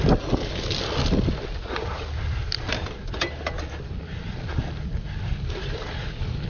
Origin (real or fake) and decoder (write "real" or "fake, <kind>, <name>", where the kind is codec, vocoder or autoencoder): real